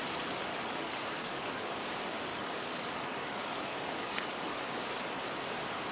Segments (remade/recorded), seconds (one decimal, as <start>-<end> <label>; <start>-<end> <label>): 0.0-0.5 recorded; 0.5-1.8 remade; 1.8-2.3 recorded; 2.3-4.6 remade; 4.6-5.9 recorded